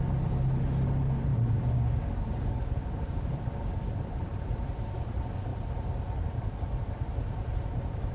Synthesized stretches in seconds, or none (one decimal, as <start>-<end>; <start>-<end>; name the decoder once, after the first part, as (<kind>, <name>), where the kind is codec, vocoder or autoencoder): 1.3-3.9 (codec, DAC)